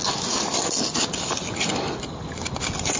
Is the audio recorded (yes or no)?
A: yes